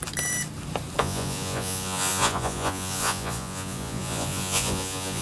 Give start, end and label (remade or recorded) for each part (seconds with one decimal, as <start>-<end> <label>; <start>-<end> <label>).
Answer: 0.0-1.0 recorded; 1.0-5.2 remade